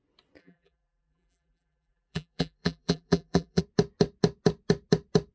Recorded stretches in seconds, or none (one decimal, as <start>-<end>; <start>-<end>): 0.0-0.4; 3.6-5.3